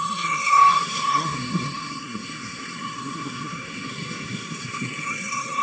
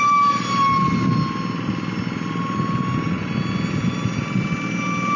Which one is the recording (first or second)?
second